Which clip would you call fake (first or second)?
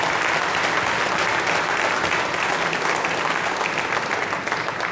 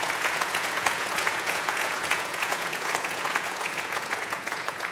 second